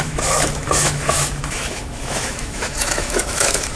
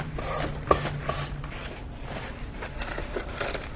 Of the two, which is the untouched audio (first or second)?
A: second